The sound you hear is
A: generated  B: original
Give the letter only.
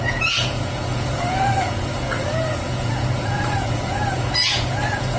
A